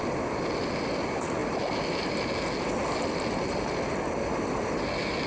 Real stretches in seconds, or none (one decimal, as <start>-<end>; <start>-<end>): 0.0-5.3